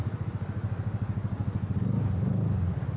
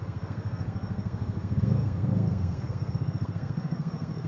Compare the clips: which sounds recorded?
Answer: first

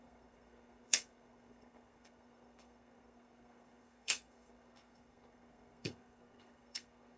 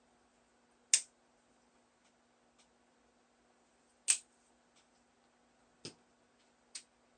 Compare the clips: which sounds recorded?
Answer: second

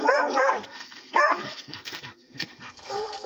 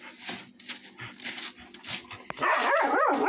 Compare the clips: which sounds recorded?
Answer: second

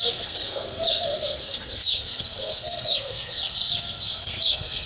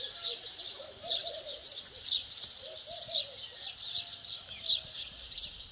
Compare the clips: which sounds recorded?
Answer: second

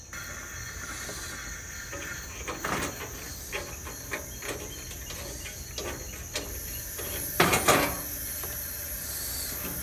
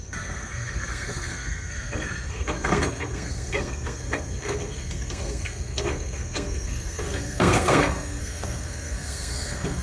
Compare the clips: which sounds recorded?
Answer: first